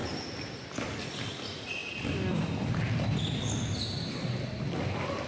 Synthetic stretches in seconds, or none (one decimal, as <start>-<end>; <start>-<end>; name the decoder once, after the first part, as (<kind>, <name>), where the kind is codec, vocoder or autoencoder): none